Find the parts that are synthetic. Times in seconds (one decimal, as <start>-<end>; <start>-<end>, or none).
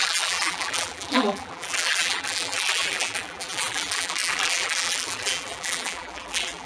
0.0-6.7